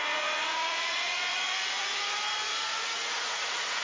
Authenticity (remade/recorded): remade